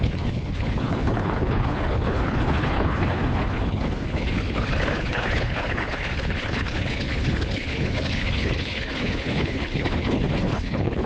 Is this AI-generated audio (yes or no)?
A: yes